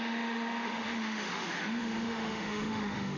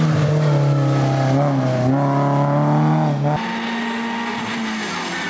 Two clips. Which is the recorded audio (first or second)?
second